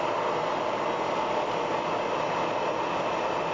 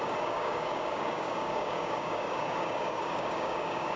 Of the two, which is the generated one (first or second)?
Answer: second